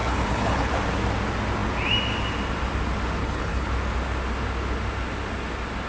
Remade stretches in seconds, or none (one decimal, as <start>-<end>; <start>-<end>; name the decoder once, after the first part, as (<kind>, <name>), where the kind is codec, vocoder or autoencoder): 0.0-0.7 (codec, HILCodec); 3.2-3.7